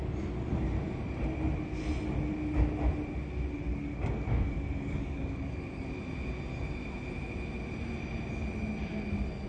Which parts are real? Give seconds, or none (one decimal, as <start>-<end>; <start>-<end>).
0.0-3.7; 5.9-9.5